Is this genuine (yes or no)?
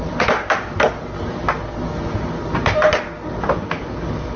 yes